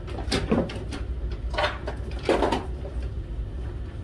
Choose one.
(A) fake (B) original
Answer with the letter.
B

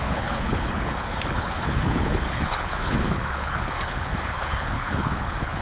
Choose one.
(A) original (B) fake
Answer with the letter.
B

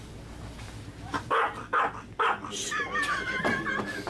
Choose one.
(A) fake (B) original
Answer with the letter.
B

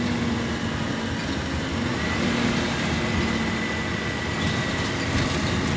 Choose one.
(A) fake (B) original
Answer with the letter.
B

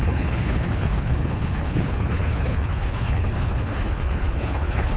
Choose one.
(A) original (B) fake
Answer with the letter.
B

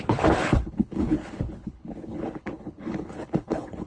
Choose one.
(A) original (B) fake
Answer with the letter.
B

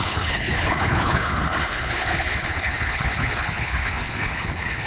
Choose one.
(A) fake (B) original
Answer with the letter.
A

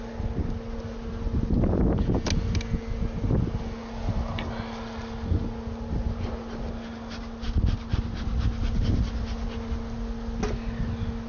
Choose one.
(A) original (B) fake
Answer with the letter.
A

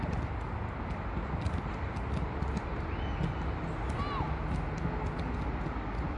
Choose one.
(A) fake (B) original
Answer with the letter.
B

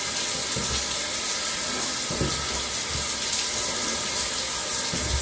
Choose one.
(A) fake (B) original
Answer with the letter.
B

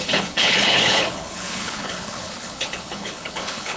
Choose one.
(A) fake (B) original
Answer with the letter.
A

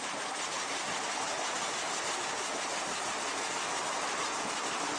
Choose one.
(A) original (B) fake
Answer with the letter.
A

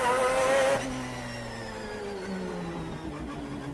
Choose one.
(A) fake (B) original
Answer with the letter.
B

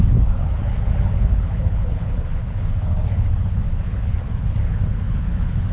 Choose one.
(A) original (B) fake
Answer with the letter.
B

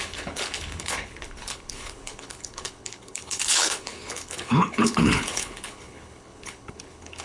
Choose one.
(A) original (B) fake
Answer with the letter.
B